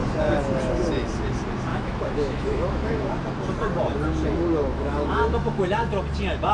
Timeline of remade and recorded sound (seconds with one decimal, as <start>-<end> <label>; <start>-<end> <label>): 0.0-1.7 recorded; 1.7-3.1 remade; 3.1-4.7 recorded; 4.7-6.0 remade; 6.0-6.5 recorded